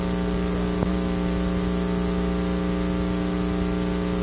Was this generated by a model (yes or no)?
no